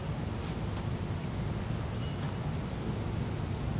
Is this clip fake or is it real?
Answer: real